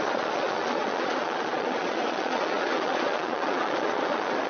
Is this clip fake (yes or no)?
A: yes